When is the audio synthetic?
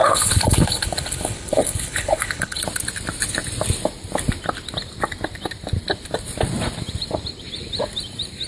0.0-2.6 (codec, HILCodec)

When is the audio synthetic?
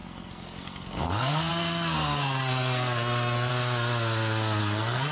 0.0-3.5 (codec, SNAC); 4.6-5.1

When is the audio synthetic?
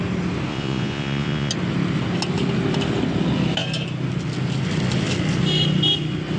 0.5-1.5 (vocoder, Vocos)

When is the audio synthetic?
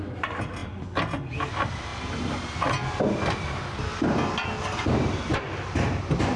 none